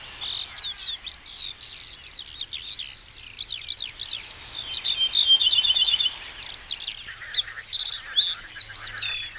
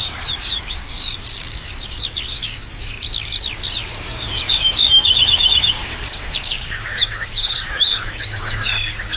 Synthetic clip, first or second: second